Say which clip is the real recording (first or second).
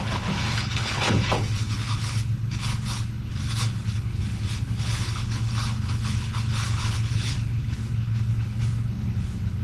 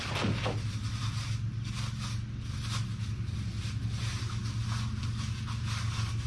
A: second